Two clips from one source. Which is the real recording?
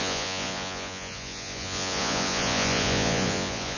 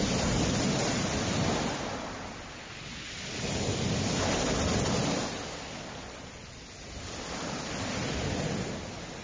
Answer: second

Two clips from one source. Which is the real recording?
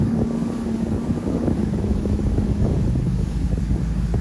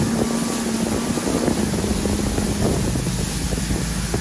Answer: second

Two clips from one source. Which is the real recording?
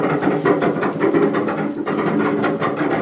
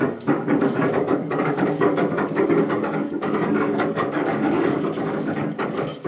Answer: first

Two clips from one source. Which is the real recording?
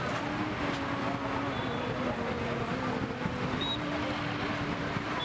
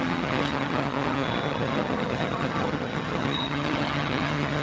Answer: first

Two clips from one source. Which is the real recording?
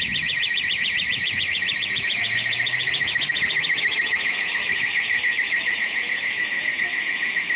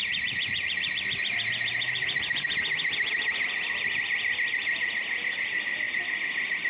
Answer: second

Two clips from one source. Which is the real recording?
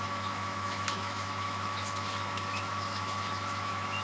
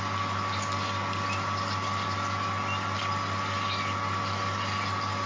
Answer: second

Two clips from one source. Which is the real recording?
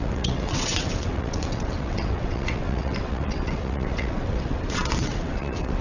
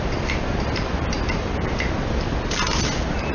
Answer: second